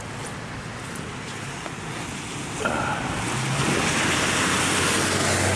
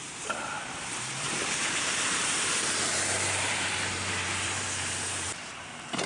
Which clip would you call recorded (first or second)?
first